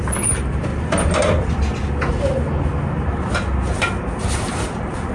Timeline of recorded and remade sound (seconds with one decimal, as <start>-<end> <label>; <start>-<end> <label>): 0.0-0.7 remade; 0.7-3.8 recorded; 3.8-5.1 remade